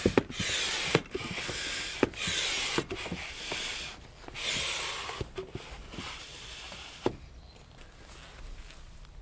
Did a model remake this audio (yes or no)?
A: no